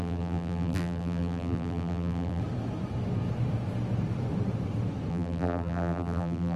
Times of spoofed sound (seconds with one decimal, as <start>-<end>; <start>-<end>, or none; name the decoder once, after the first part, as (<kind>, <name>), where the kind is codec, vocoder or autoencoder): 0.0-2.4 (vocoder, BigVGAN v2); 5.1-6.6